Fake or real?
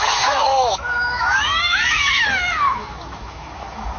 fake